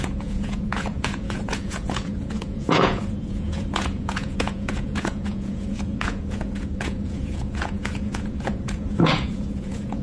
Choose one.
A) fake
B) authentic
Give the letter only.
A